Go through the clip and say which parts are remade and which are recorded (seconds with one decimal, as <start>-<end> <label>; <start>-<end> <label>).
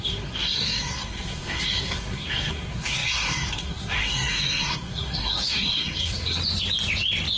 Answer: 0.0-6.4 remade; 6.4-7.4 recorded